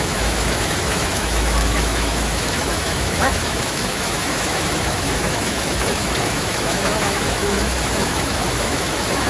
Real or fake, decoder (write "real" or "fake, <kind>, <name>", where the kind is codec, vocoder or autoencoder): fake, autoencoder, DAC-VAE